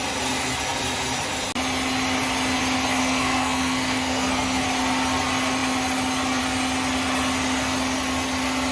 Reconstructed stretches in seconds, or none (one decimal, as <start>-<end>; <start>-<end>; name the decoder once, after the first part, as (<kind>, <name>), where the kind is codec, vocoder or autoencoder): 3.0-4.6 (codec, SNAC)